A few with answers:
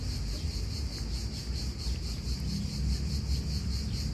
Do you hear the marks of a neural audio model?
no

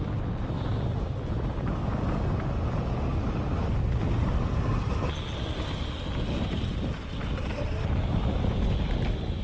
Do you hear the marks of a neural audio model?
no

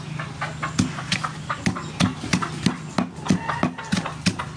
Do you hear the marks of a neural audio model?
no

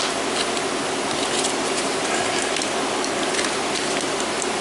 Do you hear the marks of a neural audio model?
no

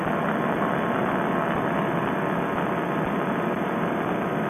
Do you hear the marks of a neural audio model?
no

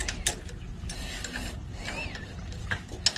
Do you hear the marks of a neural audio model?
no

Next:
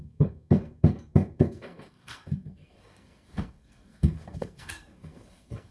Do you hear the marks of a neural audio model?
yes